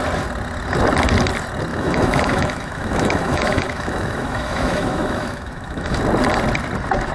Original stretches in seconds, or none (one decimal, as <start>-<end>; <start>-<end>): 0.0-1.7; 6.0-7.1